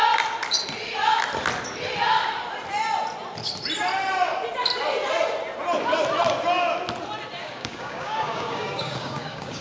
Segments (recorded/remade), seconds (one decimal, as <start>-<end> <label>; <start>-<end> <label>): 0.0-7.4 recorded; 7.4-9.6 remade